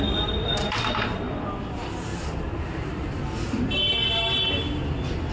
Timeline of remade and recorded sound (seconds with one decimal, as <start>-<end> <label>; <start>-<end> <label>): 0.0-5.3 recorded